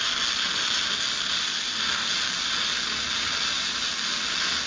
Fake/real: real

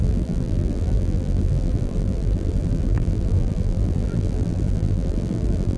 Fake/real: fake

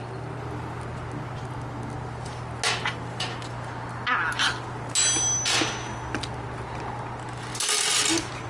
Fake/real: real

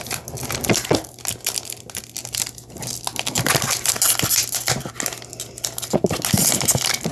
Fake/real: real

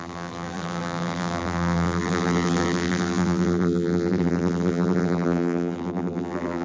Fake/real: fake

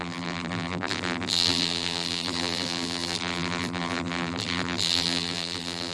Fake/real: fake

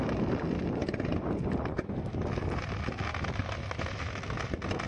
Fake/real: real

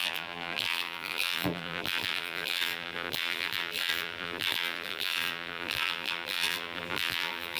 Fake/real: fake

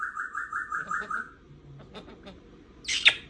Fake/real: real